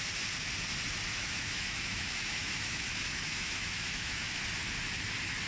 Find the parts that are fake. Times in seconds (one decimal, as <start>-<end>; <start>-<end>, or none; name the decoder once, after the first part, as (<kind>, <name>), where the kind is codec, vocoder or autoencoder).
1.1-4.4 (autoencoder, DAC-VAE)